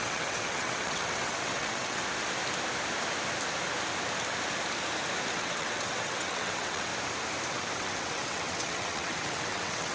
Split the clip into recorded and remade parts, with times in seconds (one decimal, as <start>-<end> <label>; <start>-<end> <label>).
0.0-2.0 remade; 2.0-5.3 recorded; 5.3-6.9 remade; 6.9-7.5 recorded; 7.5-9.9 remade